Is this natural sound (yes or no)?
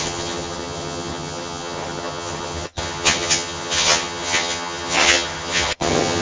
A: no